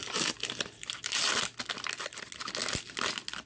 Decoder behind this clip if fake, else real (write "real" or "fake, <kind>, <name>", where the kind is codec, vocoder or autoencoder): real